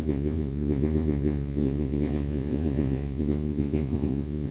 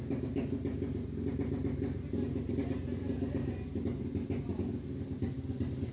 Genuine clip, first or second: second